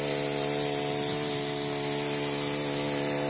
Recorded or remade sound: recorded